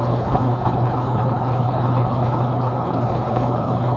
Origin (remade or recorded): remade